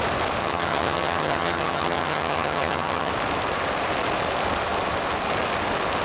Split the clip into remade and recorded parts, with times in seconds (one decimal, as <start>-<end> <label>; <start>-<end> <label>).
0.0-0.4 recorded; 0.4-3.1 remade; 3.1-6.0 recorded